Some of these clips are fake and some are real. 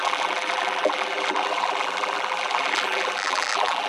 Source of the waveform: fake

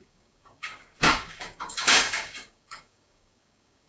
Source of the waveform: fake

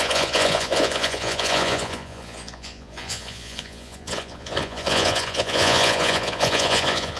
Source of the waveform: fake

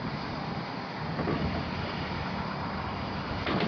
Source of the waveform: real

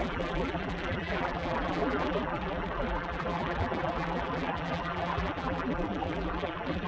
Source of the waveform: fake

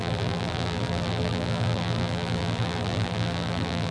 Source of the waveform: fake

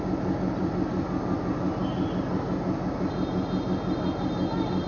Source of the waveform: real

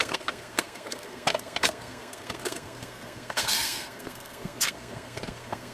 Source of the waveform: fake